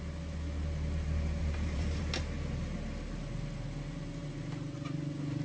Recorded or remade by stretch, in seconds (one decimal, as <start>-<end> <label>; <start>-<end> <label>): 0.0-1.4 recorded; 1.4-2.0 remade; 2.0-5.4 recorded